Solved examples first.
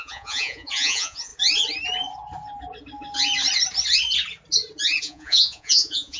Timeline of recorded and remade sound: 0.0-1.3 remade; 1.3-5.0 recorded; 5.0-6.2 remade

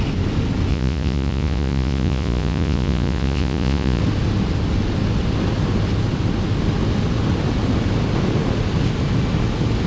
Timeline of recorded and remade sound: 0.0-0.7 recorded; 0.7-4.0 remade; 4.0-9.9 recorded